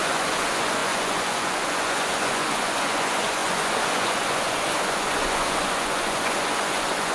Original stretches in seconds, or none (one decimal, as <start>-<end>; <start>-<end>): none